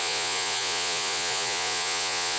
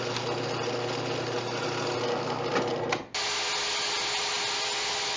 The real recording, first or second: second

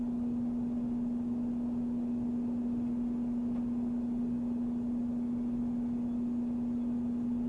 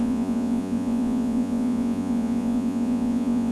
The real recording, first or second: first